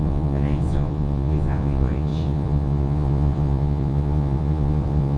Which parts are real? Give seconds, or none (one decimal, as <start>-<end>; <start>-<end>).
none